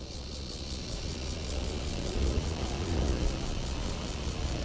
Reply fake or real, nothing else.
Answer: fake